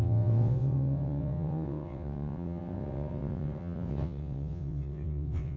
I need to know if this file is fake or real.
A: fake